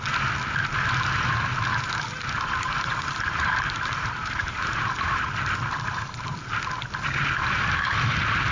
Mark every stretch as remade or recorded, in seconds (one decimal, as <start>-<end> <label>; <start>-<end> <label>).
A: 0.0-1.7 recorded; 1.7-5.5 remade; 5.5-8.5 recorded